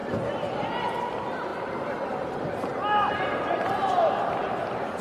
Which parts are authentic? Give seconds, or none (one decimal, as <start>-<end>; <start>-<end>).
0.8-1.5; 4.1-5.0